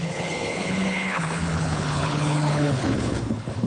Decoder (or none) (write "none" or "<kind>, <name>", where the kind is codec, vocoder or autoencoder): codec, HILCodec